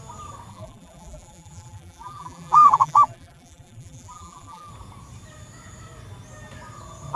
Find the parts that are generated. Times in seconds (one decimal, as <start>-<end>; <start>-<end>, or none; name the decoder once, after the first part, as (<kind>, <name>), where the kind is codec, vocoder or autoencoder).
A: 0.5-4.7 (vocoder, BigVGAN v2)

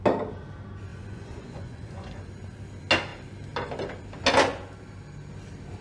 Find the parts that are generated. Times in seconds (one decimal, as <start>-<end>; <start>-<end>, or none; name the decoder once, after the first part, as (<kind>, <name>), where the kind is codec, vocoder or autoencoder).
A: 0.9-2.1 (vocoder, Vocos)

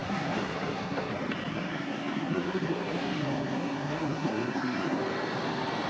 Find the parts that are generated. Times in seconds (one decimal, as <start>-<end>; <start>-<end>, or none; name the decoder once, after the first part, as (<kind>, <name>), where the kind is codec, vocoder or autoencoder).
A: 0.0-1.1 (codec, SNAC); 1.5-5.0

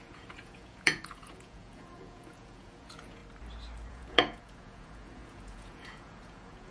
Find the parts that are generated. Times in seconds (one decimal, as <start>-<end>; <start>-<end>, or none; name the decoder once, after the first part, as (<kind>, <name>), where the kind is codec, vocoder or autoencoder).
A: 0.0-3.2 (vocoder, Vocos); 3.9-6.7

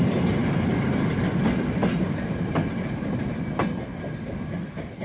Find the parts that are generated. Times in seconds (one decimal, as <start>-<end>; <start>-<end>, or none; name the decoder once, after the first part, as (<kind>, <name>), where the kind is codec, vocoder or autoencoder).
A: none

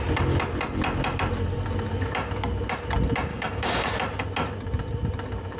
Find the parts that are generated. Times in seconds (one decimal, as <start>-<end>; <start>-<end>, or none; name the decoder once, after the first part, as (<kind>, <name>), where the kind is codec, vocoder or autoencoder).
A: 3.3-3.9 (codec, DAC)